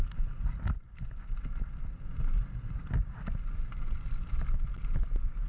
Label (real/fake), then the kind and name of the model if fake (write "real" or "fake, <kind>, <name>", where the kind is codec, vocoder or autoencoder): real